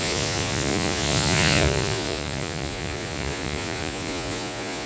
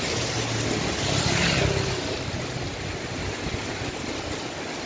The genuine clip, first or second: second